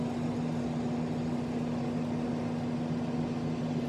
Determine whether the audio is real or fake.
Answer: real